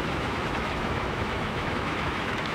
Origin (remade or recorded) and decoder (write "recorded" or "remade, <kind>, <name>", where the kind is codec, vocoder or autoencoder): remade, autoencoder, DAC-VAE